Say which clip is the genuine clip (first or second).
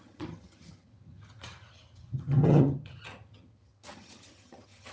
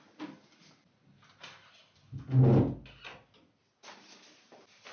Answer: second